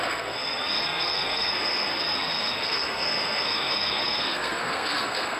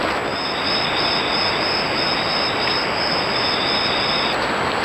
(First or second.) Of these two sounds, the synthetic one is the first